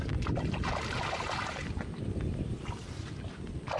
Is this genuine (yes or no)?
yes